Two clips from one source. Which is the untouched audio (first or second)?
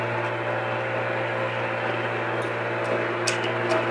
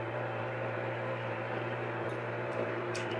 first